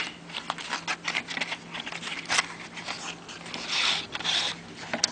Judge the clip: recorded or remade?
recorded